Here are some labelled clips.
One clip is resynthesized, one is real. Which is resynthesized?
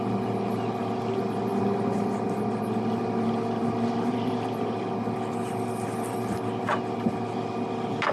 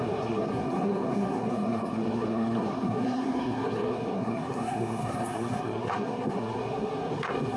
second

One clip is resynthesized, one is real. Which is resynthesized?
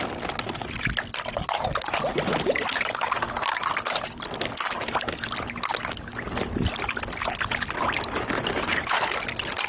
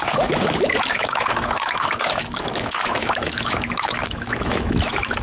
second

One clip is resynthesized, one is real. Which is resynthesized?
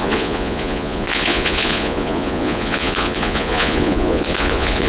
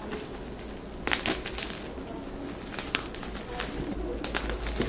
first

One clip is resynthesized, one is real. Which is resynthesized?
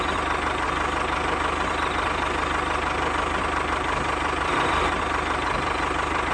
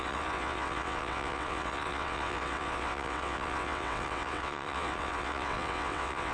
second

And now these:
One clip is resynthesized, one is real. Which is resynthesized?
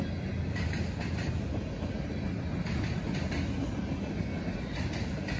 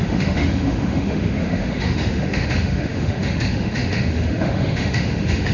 second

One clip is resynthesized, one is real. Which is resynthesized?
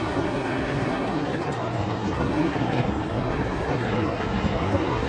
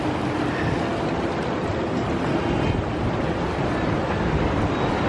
first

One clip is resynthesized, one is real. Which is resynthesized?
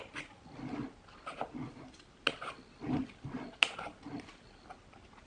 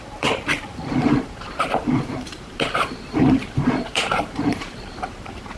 second